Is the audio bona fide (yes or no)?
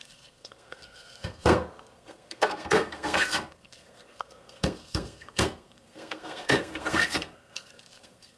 no